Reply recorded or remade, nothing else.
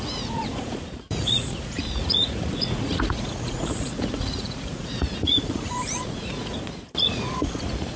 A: remade